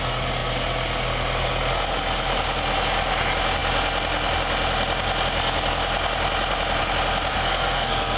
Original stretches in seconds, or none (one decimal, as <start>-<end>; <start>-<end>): 0.0-7.3